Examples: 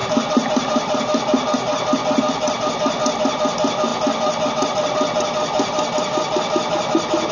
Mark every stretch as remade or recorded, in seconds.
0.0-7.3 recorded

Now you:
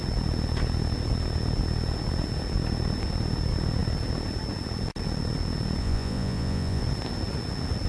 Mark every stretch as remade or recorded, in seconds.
0.0-5.8 recorded; 5.8-6.8 remade; 6.8-7.9 recorded

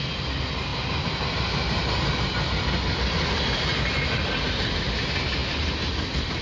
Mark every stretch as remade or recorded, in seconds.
0.0-6.4 recorded

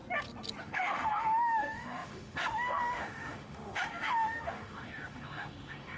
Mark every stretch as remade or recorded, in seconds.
0.0-0.6 recorded; 0.6-6.0 remade

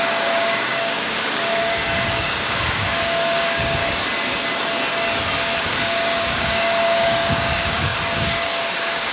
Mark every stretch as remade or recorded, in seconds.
0.0-3.8 remade; 3.8-5.6 recorded; 5.6-9.1 remade

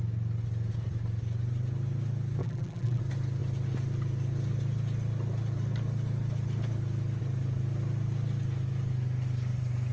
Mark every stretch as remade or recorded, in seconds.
0.0-2.4 recorded; 2.4-3.0 remade; 3.0-9.9 recorded

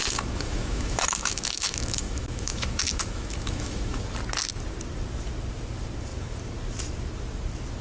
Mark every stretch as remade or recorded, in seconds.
0.0-4.0 remade; 4.0-7.8 recorded

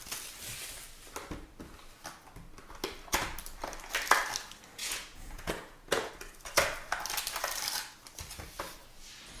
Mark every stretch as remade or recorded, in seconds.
0.0-4.8 recorded; 4.8-6.1 remade; 6.1-9.4 recorded